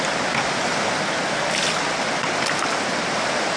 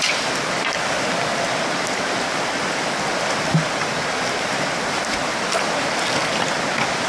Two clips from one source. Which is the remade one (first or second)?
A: second